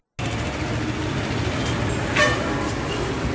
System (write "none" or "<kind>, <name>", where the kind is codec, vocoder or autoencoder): none